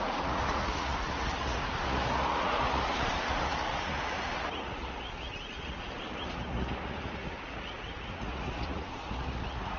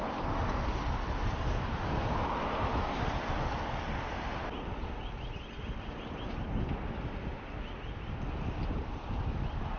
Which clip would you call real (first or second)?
second